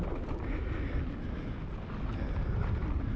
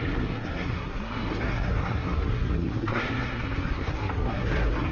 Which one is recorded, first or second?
first